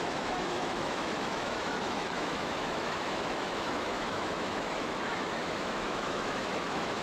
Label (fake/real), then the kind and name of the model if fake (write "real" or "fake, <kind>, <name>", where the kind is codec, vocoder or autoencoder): fake, autoencoder, DAC-VAE